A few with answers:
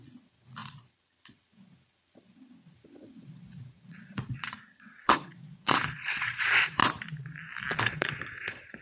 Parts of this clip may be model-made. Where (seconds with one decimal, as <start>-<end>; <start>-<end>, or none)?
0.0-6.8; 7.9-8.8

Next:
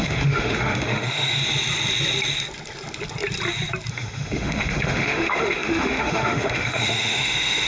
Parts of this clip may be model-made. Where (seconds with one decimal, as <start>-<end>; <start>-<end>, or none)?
0.0-1.4; 3.9-7.7

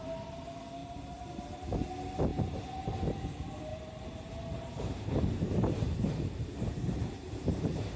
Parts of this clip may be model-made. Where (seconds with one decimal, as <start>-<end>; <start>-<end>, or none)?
0.8-1.4; 3.7-8.0

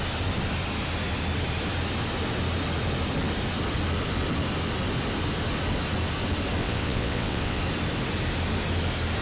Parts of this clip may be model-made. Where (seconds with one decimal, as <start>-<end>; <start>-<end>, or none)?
6.6-7.6

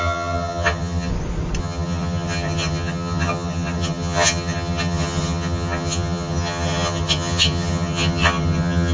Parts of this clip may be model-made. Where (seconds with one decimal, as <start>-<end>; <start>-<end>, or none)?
0.0-1.1; 1.6-8.9

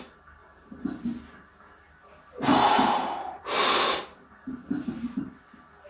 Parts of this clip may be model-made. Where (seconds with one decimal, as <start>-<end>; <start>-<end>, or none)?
0.4-1.5; 2.5-5.4

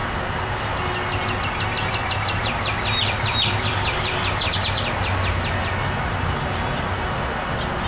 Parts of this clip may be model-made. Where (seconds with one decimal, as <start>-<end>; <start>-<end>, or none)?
3.0-4.2

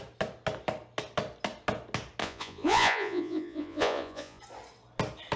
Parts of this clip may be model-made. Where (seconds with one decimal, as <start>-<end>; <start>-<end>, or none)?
2.2-4.4